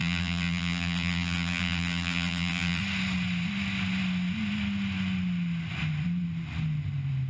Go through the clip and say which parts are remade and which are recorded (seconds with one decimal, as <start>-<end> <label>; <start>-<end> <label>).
0.0-2.8 remade; 2.8-7.3 recorded